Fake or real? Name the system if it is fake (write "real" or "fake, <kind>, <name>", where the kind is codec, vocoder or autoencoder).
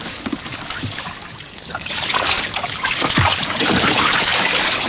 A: fake, codec, DAC